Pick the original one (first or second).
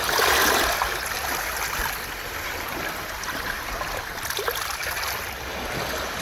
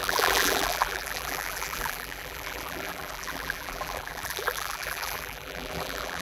first